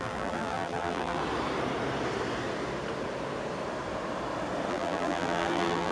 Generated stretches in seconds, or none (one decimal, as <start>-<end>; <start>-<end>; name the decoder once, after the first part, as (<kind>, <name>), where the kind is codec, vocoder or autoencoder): 0.0-1.2 (vocoder, BigVGAN v2); 4.7-5.9

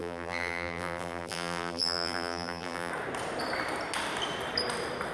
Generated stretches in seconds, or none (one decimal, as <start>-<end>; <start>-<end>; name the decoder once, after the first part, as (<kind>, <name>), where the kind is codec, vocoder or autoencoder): 0.0-2.9 (vocoder, BigVGAN v2)

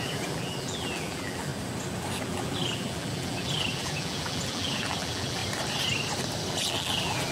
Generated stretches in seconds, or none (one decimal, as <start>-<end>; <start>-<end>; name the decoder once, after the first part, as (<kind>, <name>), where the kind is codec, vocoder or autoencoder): 0.0-1.5 (vocoder, BigVGAN v2); 2.2-5.4; 6.5-7.3

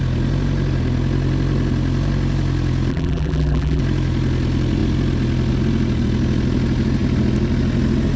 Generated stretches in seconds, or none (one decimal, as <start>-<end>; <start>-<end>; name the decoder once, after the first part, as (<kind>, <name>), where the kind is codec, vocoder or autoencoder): 2.9-3.8 (vocoder, BigVGAN v2)

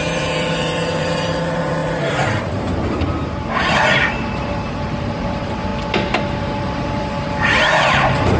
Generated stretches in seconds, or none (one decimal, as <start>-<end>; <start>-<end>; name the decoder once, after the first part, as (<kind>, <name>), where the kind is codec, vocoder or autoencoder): 0.0-5.7 (vocoder, BigVGAN v2); 6.4-8.4